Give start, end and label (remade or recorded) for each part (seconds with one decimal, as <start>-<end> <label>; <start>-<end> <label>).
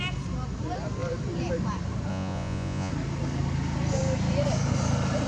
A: 0.0-2.1 recorded; 2.1-2.9 remade; 2.9-5.3 recorded